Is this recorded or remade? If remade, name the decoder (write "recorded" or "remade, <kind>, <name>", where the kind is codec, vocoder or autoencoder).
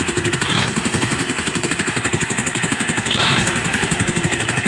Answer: remade, codec, SNAC